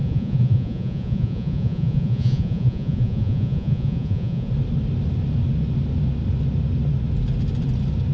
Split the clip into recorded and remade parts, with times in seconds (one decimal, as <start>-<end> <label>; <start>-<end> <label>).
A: 0.0-4.5 remade; 4.5-8.1 recorded